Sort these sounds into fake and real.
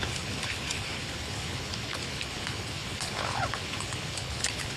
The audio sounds fake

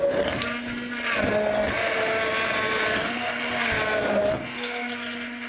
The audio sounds real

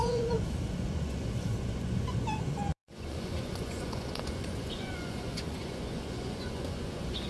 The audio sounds fake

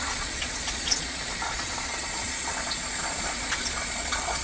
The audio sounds fake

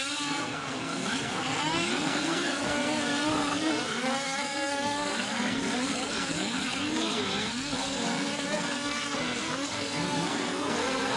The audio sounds fake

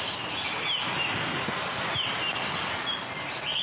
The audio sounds real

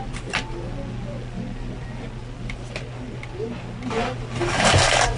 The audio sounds real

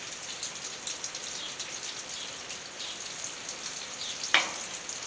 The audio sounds real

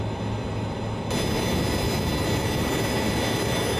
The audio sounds real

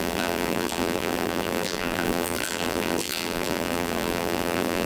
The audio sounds fake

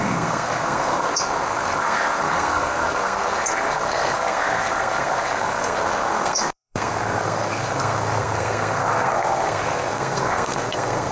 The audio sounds fake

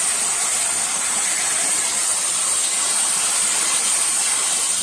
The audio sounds real